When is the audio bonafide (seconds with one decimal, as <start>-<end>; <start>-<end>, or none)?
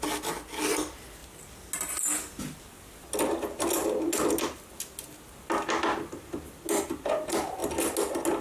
0.0-8.4